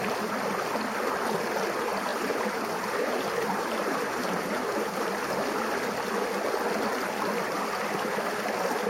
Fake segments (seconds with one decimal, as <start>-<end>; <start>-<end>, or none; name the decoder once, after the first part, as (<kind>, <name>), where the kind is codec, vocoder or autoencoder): 2.1-5.9 (vocoder, BigVGAN v2)